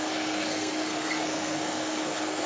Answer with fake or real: fake